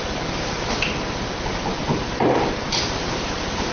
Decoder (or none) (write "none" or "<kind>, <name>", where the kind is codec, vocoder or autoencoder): none